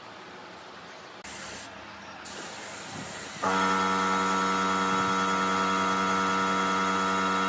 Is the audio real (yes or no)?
yes